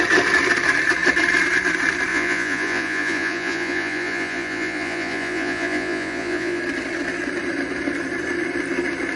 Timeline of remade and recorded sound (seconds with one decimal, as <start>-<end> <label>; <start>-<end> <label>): 0.0-2.1 recorded; 2.1-6.6 remade; 6.6-9.2 recorded